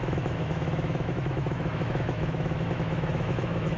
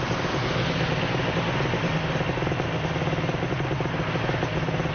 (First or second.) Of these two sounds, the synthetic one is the first